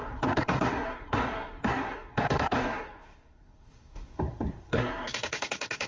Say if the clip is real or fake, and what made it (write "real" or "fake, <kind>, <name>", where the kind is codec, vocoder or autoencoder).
fake, codec, SNAC